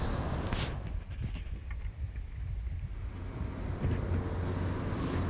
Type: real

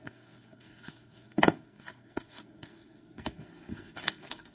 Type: fake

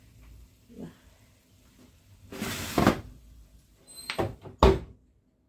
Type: real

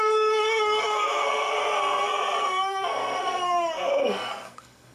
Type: fake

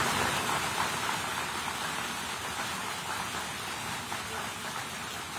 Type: real